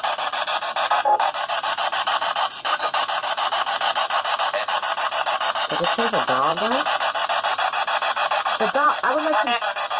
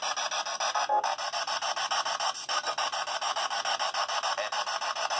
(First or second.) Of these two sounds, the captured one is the second